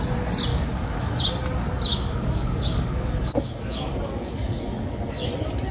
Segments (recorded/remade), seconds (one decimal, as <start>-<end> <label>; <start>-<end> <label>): 0.0-0.5 recorded; 0.5-1.2 remade; 1.2-1.9 recorded; 1.9-5.3 remade; 5.3-5.7 recorded

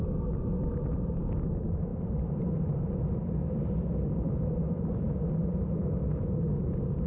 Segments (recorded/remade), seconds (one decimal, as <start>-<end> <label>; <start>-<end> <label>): 0.0-1.9 recorded; 1.9-6.2 remade; 6.2-7.1 recorded

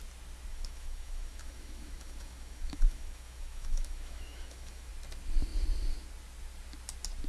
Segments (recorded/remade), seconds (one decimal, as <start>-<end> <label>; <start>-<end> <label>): 0.0-0.5 recorded; 0.5-4.9 remade; 4.9-7.3 recorded

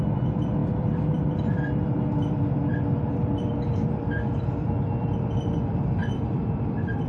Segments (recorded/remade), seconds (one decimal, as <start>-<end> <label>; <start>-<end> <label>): 0.0-7.1 remade

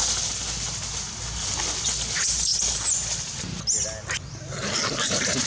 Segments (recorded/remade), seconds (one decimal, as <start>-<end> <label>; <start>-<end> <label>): 0.0-5.5 recorded

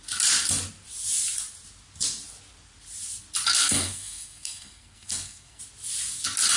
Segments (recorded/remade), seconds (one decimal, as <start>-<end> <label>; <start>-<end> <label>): 0.0-3.6 recorded; 3.6-5.6 remade; 5.6-6.6 recorded

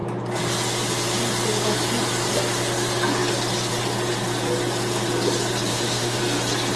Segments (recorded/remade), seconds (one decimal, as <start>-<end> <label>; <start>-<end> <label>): 0.0-5.7 recorded; 5.7-6.2 remade; 6.2-6.8 recorded

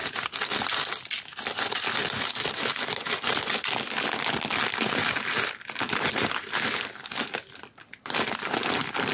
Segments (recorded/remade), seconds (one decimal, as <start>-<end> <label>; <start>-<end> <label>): 0.0-9.1 recorded